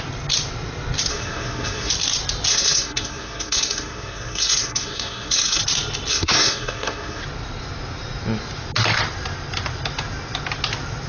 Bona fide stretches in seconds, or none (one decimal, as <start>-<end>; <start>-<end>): 0.0-1.1; 1.9-2.5; 5.6-6.1; 7.2-11.1